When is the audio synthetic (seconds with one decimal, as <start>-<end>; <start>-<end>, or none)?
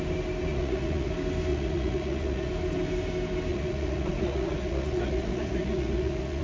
0.5-1.1; 1.5-2.5; 3.5-6.4